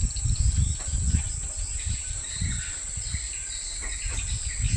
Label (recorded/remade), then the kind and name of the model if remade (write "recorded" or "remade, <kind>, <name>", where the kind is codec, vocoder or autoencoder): recorded